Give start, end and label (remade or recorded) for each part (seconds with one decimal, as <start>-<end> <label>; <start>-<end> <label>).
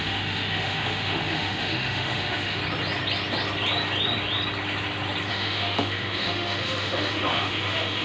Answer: 0.0-2.6 remade; 2.6-5.3 recorded; 5.3-8.0 remade